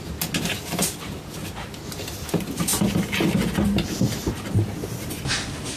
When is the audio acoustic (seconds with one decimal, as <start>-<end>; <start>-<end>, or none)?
0.0-5.8

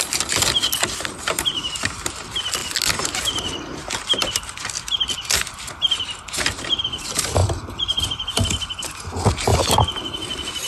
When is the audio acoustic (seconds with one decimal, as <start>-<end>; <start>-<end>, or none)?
0.0-10.7